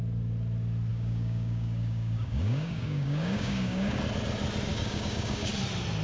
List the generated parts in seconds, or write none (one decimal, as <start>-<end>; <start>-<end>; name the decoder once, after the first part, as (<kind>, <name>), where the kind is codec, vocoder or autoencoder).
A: 0.9-4.0 (codec, DAC); 4.7-5.5

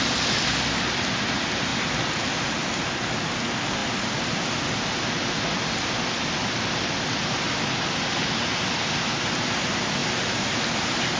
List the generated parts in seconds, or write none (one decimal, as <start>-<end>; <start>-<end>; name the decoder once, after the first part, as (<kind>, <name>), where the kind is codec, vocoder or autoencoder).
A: 10.0-10.6 (vocoder, BigVGAN v2)

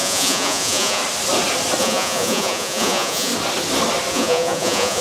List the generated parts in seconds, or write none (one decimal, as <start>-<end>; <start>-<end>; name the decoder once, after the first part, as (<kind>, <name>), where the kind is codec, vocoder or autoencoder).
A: 0.0-1.0 (vocoder, Vocos); 1.8-3.3; 4.1-5.0

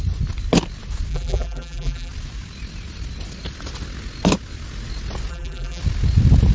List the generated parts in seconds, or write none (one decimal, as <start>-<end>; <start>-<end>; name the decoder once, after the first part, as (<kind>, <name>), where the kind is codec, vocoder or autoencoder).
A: 1.1-2.1 (vocoder, BigVGAN v2); 5.3-5.8

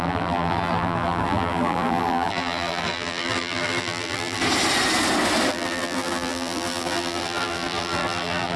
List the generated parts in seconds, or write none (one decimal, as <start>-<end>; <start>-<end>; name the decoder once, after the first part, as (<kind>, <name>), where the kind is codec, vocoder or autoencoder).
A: 0.0-4.4 (vocoder, BigVGAN v2); 5.5-8.6

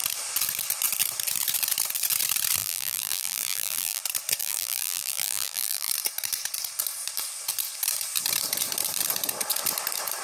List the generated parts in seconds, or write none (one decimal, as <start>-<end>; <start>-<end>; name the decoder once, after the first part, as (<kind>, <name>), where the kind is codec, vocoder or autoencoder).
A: 2.6-4.0 (vocoder, BigVGAN v2); 4.4-5.9

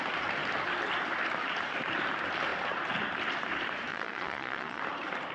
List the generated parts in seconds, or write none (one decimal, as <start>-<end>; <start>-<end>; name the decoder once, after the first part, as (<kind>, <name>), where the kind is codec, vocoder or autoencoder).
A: 3.9-4.8 (vocoder, Vocos)

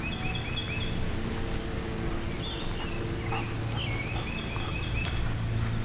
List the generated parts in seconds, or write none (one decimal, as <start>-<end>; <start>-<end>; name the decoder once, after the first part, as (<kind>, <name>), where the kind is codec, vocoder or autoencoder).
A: none